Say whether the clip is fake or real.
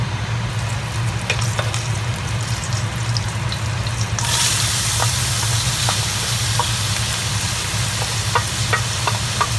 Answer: real